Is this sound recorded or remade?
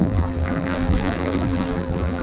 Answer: remade